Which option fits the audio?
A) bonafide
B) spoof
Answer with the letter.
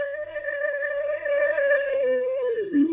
B